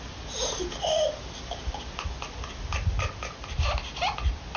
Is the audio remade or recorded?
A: recorded